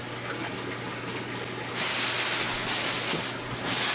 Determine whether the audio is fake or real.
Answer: real